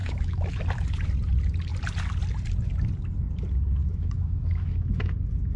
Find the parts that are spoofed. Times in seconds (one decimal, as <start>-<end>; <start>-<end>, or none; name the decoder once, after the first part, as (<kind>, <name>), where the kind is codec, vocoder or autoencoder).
0.0-0.6 (autoencoder, DAC-VAE); 3.8-5.1